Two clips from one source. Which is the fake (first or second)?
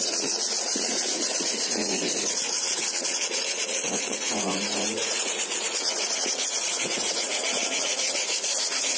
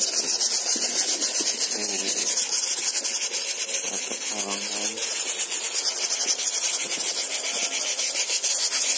first